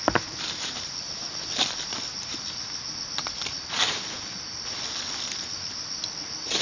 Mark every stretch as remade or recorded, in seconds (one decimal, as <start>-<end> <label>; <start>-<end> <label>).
0.0-6.6 recorded